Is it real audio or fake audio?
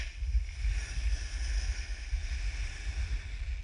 real